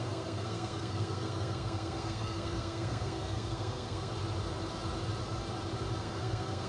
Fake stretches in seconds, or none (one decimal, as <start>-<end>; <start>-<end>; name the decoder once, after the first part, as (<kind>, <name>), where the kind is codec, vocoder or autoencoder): 0.0-4.1 (codec, SNAC); 6.0-6.7